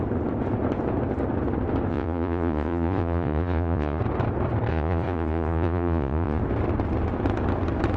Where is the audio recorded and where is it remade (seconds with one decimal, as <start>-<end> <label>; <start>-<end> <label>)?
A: 0.0-1.9 recorded; 1.9-4.0 remade; 4.0-4.7 recorded; 4.7-6.4 remade; 6.4-8.0 recorded

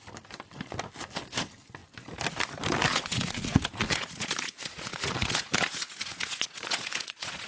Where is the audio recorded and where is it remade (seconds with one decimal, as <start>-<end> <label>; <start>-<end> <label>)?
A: 0.0-2.9 recorded; 2.9-7.5 remade